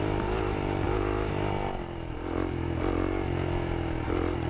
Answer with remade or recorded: recorded